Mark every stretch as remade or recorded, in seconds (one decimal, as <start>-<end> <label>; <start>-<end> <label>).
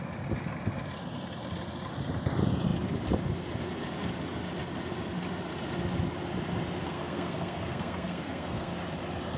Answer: 0.0-6.8 recorded; 6.8-8.7 remade; 8.7-9.4 recorded